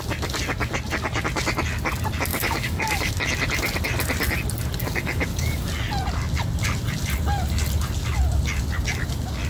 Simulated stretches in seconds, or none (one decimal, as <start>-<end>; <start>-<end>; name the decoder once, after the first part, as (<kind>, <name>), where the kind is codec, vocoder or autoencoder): 2.3-3.1 (codec, DAC); 4.8-5.7